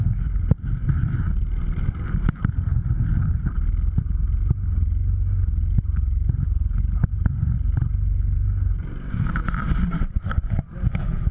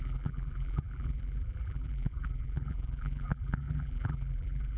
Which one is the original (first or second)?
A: first